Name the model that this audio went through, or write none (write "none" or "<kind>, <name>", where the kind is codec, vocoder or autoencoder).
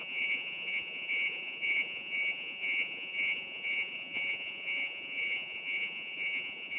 vocoder, Vocos